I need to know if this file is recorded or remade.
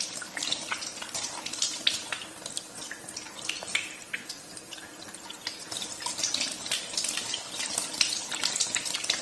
recorded